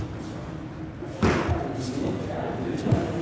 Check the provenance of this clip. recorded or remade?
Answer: recorded